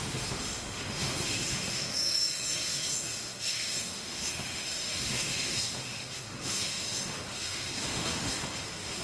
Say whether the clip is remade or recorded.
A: remade